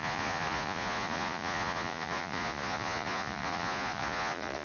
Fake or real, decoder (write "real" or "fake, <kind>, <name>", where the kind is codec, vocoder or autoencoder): fake, vocoder, Vocos